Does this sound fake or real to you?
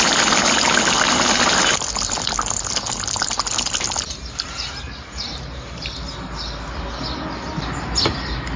real